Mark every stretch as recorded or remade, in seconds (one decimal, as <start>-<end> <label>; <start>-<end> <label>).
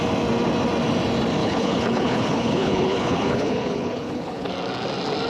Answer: 0.0-1.4 recorded; 1.4-4.5 remade; 4.5-5.3 recorded